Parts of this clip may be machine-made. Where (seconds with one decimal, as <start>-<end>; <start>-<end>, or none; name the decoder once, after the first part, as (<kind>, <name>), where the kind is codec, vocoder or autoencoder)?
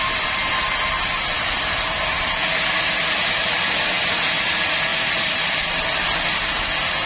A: 4.9-5.5 (vocoder, BigVGAN v2)